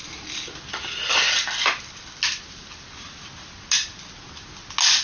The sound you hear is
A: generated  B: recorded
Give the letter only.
B